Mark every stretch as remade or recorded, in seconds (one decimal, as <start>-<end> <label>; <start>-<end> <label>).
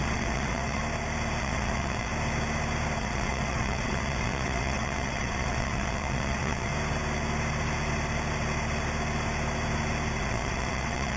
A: 0.0-0.8 remade; 0.8-1.4 recorded; 1.4-2.1 remade; 2.1-3.0 recorded; 3.0-6.7 remade; 6.7-10.2 recorded; 10.2-11.2 remade